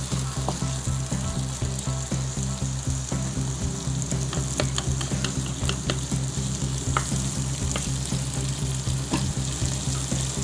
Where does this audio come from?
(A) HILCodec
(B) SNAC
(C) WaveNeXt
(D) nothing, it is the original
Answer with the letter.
D